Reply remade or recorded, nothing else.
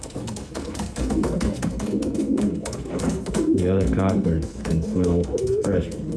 remade